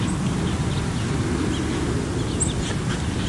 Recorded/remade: recorded